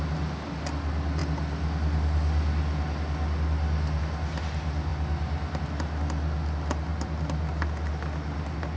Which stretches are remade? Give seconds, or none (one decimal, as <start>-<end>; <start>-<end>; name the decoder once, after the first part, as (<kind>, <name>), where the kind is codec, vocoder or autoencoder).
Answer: none